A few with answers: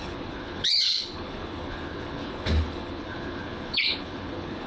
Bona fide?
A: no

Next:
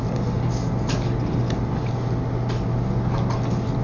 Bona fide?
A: yes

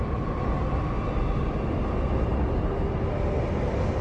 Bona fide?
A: yes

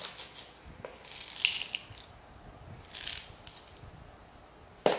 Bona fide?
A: yes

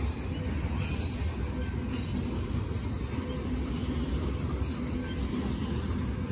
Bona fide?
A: yes